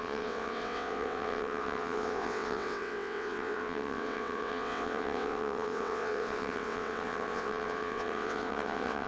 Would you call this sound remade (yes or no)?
yes